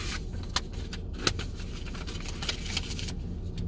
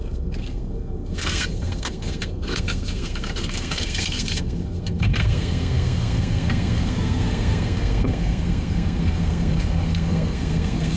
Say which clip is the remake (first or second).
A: second